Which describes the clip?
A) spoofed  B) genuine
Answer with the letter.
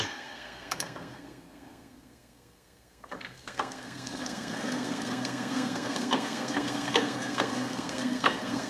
A